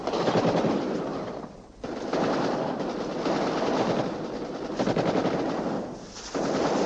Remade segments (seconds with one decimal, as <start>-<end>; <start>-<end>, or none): 0.0-3.1